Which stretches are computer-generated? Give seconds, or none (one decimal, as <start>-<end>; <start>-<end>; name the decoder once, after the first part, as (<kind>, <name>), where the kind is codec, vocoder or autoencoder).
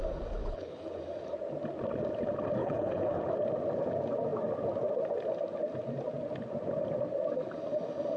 0.4-1.0 (codec, HILCodec); 2.6-3.2